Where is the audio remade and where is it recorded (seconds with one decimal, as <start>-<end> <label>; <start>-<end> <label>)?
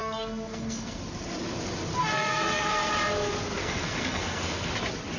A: 0.0-1.0 remade; 1.0-2.0 recorded; 2.0-2.9 remade; 2.9-3.6 recorded; 3.6-4.7 remade; 4.7-5.2 recorded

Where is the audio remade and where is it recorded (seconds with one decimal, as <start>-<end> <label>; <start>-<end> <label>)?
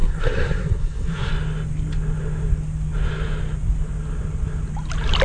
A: 0.0-1.3 remade; 1.3-5.2 recorded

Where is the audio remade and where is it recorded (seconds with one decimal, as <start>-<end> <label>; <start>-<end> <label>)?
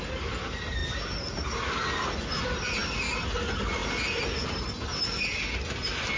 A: 0.0-6.2 recorded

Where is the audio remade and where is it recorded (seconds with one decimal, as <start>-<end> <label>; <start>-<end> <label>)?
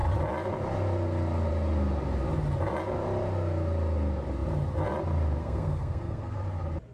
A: 0.0-5.4 recorded; 5.4-6.4 remade; 6.4-6.9 recorded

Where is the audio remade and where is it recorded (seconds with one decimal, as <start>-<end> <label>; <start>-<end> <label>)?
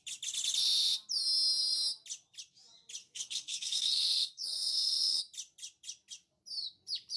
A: 0.0-3.0 recorded; 3.0-5.2 remade; 5.2-7.2 recorded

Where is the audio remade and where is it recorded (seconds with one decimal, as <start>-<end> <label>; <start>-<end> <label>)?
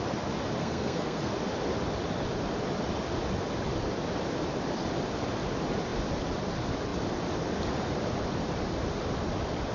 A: 0.0-0.6 recorded; 0.6-1.3 remade; 1.3-9.7 recorded